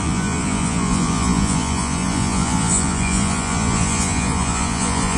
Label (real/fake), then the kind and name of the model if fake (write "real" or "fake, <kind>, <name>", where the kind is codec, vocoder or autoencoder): fake, vocoder, Vocos